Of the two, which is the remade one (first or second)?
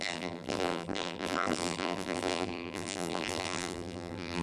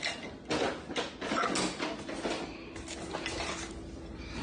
first